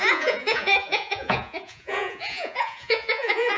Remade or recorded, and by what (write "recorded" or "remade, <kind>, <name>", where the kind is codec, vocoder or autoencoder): remade, vocoder, Vocos